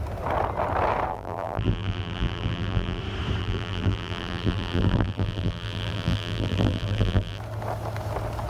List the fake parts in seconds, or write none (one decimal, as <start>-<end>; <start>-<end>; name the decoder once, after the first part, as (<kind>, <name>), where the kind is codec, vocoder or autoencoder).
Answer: 1.1-3.0 (vocoder, BigVGAN v2); 3.4-7.4